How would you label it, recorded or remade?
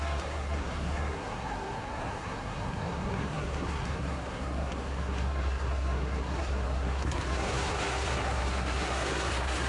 remade